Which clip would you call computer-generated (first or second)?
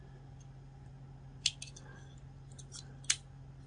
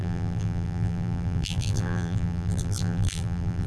second